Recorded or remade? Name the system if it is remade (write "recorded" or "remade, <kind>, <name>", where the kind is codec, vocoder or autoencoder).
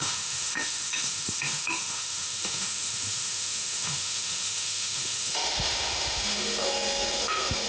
remade, autoencoder, DAC-VAE